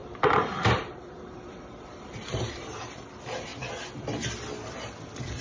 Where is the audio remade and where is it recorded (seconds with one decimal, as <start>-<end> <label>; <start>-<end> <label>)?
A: 0.0-3.1 remade; 3.1-5.4 recorded